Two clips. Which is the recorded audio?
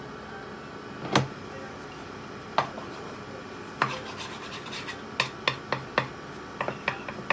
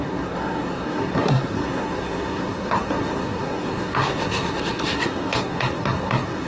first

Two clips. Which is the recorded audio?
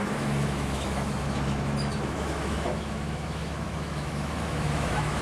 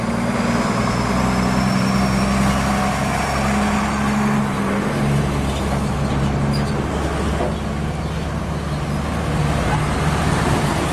second